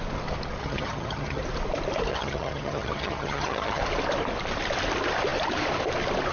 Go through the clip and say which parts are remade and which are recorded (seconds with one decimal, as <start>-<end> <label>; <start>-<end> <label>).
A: 0.0-0.6 recorded; 0.6-1.4 remade; 1.4-2.1 recorded; 2.1-3.8 remade; 3.8-6.3 recorded